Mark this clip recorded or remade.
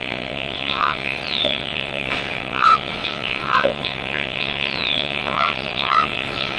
remade